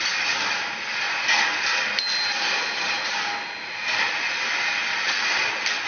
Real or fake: real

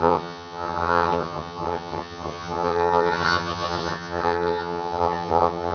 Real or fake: fake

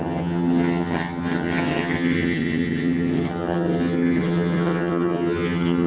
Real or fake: fake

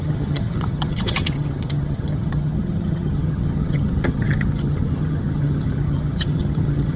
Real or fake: fake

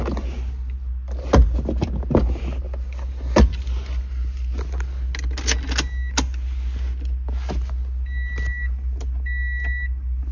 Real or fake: real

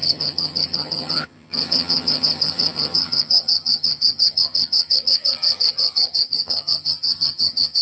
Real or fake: fake